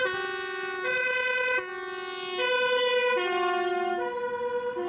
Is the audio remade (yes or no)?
no